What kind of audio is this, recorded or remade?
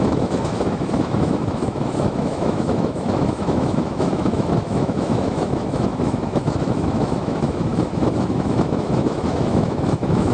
remade